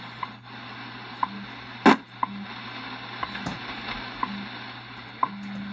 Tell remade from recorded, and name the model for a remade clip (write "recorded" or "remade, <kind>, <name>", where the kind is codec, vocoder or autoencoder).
recorded